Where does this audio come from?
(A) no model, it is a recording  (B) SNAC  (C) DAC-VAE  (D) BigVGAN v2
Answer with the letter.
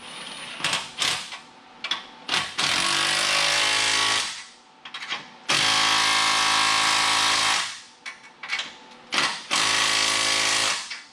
A